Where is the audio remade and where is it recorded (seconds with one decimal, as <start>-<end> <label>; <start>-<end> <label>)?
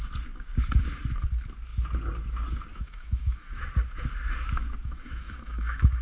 0.0-2.7 recorded; 2.7-3.6 remade; 3.6-4.8 recorded; 4.8-6.0 remade